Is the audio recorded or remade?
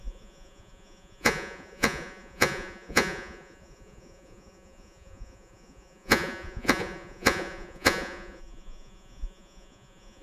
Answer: remade